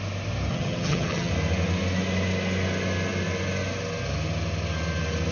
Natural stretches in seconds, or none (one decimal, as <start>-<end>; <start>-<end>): 0.0-0.5; 1.3-5.3